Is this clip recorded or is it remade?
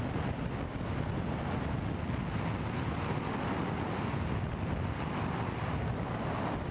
recorded